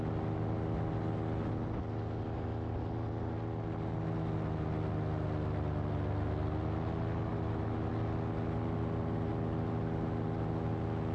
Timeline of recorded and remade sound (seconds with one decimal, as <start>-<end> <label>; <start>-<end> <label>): 0.0-7.3 recorded; 7.3-7.9 remade; 7.9-11.1 recorded